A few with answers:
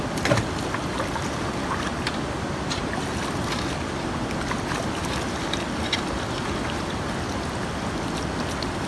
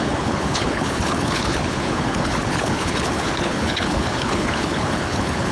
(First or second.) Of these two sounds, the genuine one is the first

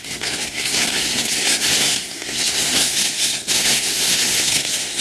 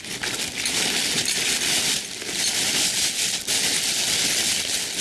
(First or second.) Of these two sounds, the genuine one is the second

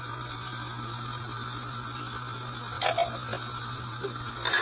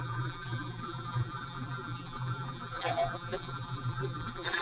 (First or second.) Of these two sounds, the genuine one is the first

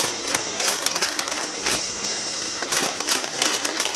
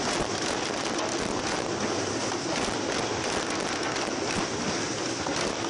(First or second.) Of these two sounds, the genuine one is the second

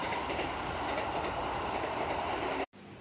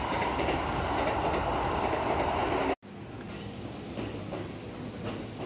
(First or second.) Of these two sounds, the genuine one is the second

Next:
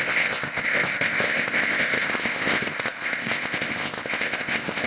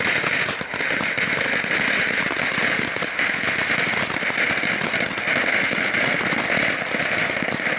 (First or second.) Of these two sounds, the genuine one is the second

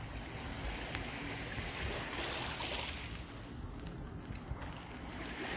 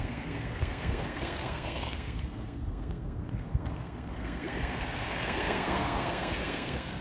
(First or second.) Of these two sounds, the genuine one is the first